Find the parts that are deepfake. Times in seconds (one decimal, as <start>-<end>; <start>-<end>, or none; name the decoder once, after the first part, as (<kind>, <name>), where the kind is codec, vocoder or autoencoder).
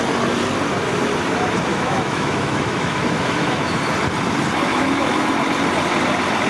1.7-3.8 (autoencoder, DAC-VAE); 4.7-5.3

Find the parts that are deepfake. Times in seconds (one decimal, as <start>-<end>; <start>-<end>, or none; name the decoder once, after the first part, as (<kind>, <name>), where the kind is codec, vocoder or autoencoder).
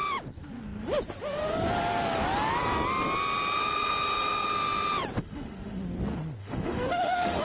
5.2-5.8 (autoencoder, DAC-VAE); 6.4-7.4